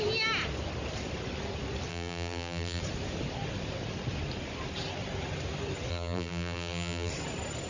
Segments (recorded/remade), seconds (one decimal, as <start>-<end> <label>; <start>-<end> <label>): 0.0-1.9 recorded; 1.9-2.8 remade; 2.8-5.9 recorded; 5.9-7.1 remade; 7.1-7.7 recorded